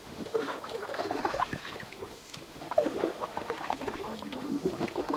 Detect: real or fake fake